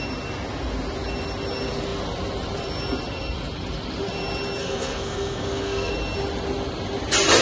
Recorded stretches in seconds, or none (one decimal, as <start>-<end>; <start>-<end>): 0.0-4.6; 5.9-7.4